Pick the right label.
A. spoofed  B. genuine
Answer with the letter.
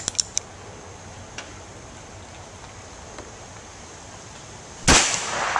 B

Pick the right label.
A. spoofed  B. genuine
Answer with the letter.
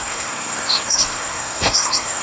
A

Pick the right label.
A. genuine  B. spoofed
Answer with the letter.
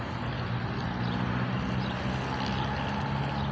A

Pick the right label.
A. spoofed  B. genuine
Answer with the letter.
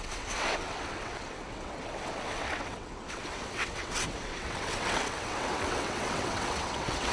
A